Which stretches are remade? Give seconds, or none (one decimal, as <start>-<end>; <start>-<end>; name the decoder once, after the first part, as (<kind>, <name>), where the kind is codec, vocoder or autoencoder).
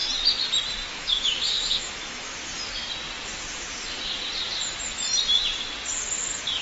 0.9-2.4 (autoencoder, DAC-VAE)